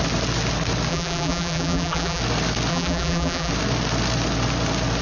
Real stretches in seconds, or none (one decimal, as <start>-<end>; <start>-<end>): 0.0-0.9; 2.2-2.7; 3.5-5.0